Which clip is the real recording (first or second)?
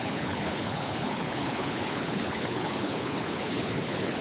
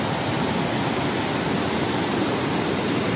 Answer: second